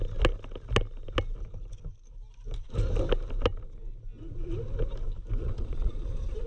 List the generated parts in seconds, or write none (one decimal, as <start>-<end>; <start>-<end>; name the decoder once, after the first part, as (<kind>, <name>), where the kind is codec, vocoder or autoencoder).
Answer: 5.4-6.5 (vocoder, Vocos)